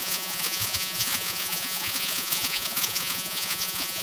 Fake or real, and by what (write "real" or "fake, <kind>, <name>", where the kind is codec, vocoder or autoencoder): fake, vocoder, Vocos